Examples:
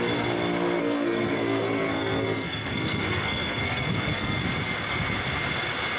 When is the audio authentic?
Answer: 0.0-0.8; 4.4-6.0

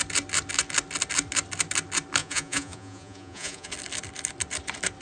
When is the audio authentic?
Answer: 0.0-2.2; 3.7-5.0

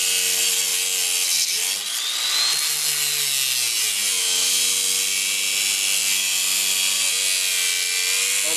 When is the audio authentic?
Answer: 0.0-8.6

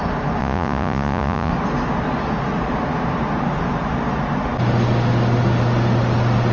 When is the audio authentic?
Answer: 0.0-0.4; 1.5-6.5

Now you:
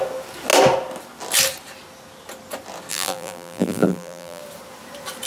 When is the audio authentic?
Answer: 0.0-2.9; 4.4-5.3